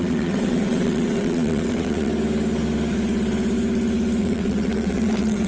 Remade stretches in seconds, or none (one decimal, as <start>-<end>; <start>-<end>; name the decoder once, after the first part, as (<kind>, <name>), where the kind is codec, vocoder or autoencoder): 0.0-2.1 (vocoder, WaveNeXt); 4.2-5.5